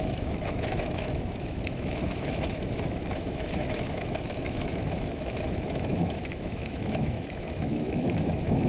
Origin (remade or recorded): remade